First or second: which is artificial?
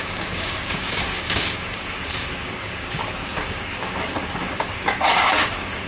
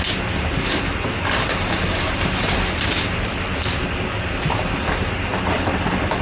first